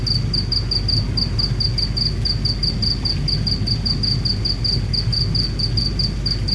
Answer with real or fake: real